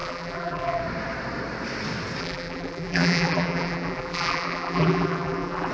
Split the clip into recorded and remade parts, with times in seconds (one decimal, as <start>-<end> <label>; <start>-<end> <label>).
0.0-0.8 remade; 0.8-2.2 recorded; 2.2-5.7 remade